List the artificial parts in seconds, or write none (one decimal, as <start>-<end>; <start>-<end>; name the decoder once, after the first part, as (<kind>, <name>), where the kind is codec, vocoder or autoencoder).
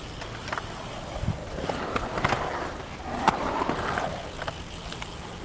none